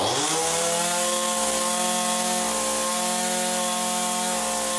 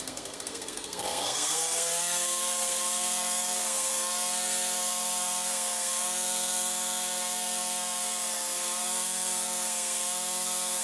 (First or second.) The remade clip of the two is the second